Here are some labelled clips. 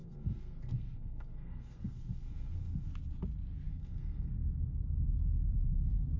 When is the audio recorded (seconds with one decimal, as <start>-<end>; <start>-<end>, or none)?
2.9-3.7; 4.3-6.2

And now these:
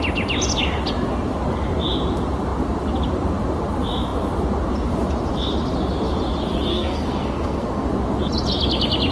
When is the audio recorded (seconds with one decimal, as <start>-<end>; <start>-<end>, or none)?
0.0-6.7; 7.9-9.1

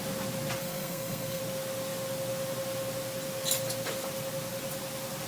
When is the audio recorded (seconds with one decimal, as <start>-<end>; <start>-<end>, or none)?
0.0-0.6; 1.4-5.3